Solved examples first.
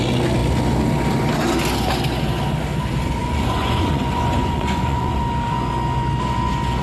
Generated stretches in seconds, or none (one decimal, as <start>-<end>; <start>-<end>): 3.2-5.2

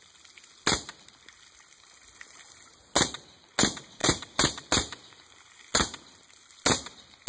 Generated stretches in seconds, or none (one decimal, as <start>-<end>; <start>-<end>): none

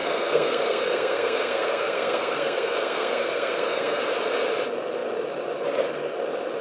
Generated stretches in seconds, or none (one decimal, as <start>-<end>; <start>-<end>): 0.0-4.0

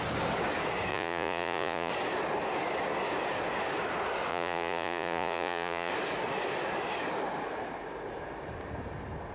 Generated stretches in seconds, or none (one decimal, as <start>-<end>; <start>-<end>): 0.9-1.9; 4.3-5.9